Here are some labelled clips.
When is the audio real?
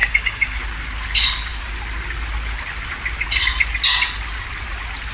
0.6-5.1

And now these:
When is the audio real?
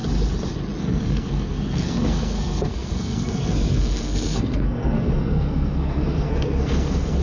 0.0-0.8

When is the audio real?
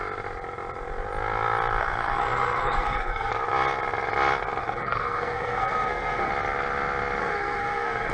0.0-1.8; 3.3-4.6; 6.3-7.2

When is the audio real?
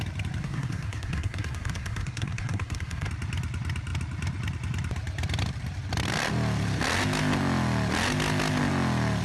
0.0-0.4; 3.1-9.2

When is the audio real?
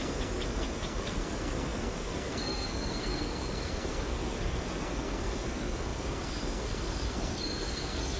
none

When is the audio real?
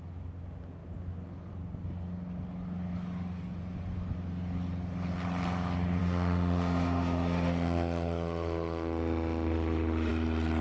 0.0-6.0; 10.1-10.6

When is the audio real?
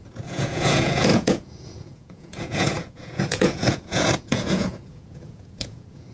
none